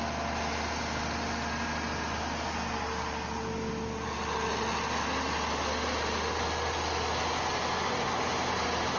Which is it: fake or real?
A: real